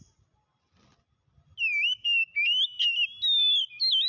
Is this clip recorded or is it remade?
recorded